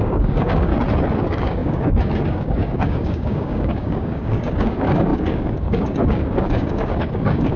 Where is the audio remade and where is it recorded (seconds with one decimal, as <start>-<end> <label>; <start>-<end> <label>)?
0.0-0.7 remade; 0.7-1.2 recorded; 1.2-7.6 remade